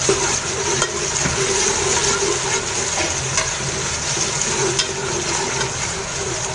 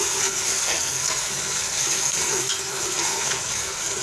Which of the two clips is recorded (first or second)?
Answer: first